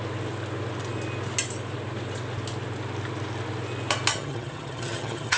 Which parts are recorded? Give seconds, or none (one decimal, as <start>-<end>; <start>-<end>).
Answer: 0.0-4.1